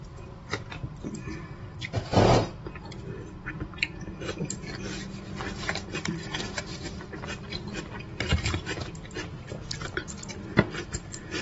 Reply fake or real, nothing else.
real